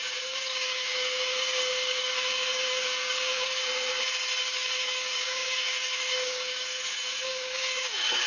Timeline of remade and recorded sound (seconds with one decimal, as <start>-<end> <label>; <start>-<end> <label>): 0.0-3.6 remade; 3.6-4.4 recorded; 4.4-8.3 remade